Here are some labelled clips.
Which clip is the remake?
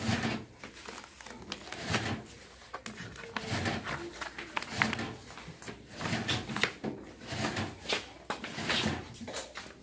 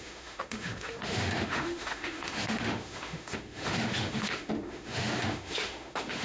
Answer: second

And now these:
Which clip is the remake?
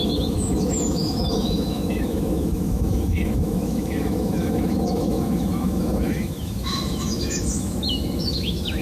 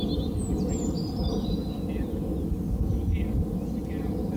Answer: first